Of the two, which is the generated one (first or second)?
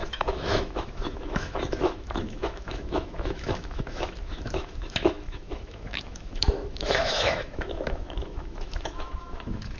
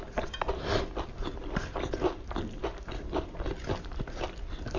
first